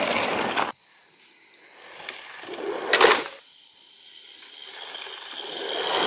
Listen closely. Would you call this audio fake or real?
real